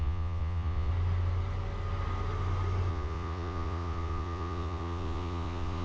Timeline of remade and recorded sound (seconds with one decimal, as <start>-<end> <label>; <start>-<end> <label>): 0.0-0.9 remade; 0.9-2.9 recorded; 2.9-5.8 remade